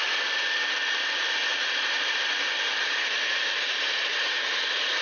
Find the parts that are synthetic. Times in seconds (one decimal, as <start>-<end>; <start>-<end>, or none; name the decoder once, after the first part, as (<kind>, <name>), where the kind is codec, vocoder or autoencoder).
4.1-5.0 (vocoder, BigVGAN v2)